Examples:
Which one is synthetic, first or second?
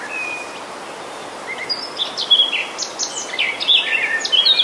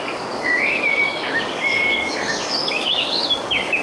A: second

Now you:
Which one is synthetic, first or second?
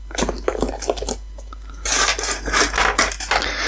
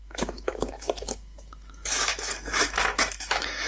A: second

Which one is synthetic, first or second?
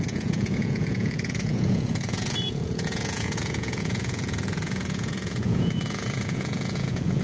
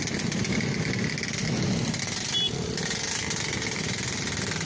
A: first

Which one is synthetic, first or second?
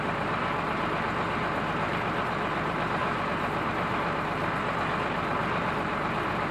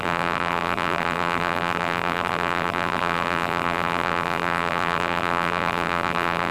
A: second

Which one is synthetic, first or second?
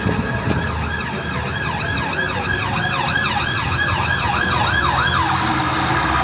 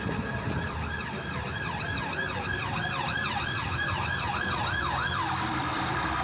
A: second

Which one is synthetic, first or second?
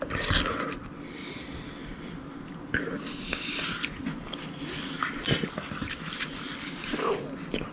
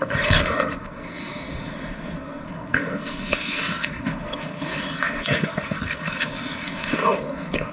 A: second